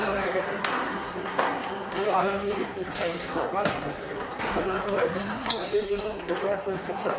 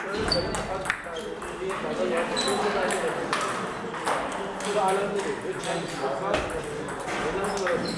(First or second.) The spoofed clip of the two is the first